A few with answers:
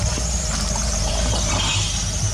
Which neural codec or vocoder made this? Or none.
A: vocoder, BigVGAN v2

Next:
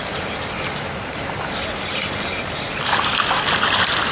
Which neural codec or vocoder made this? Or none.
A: none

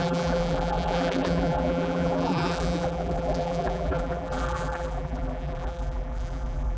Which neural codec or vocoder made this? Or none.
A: vocoder, BigVGAN v2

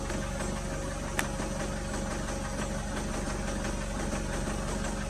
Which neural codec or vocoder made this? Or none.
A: none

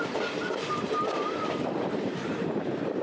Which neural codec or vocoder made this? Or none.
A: vocoder, BigVGAN v2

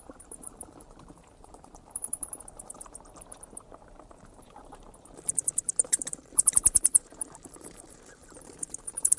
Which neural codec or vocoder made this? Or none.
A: vocoder, BigVGAN v2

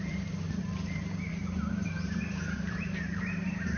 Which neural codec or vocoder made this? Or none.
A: vocoder, BigVGAN v2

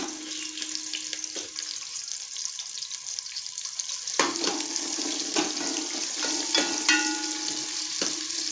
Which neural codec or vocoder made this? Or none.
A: none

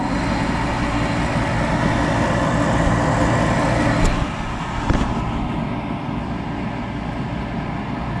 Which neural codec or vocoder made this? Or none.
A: none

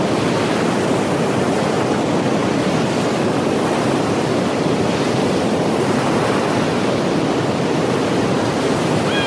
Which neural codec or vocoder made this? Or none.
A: none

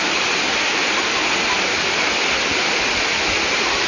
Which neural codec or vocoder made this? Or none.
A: vocoder, BigVGAN v2